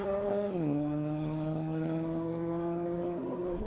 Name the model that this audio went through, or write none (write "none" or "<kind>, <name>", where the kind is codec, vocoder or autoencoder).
codec, SNAC